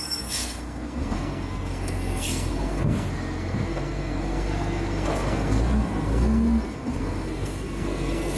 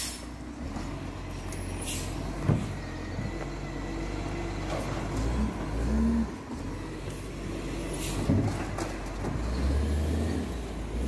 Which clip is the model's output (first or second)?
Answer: first